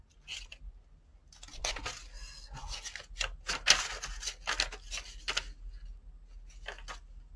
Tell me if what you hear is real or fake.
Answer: real